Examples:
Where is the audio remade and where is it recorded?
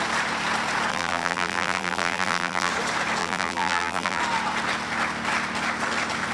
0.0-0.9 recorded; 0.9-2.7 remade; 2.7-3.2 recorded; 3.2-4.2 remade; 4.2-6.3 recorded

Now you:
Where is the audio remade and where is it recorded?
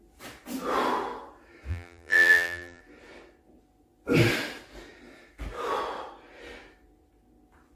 0.0-1.7 recorded; 1.7-2.8 remade; 2.8-7.8 recorded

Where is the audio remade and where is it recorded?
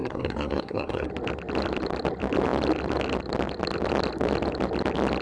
0.0-1.1 remade; 1.1-5.2 recorded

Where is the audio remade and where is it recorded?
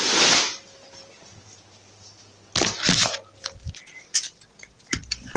0.0-5.4 recorded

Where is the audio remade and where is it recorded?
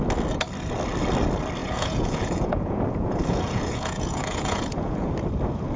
0.0-1.6 recorded; 1.6-5.1 remade; 5.1-5.8 recorded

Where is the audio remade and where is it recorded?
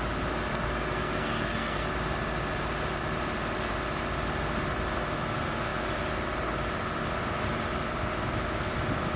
0.0-0.5 recorded; 0.5-1.9 remade; 1.9-9.2 recorded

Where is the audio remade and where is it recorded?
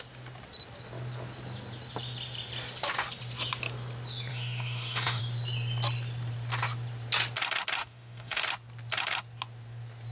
0.0-4.3 recorded; 4.3-5.2 remade; 5.2-7.8 recorded; 7.8-8.4 remade; 8.4-10.1 recorded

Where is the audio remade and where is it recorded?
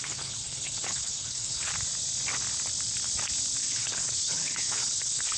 0.0-1.7 remade; 1.7-3.6 recorded; 3.6-5.4 remade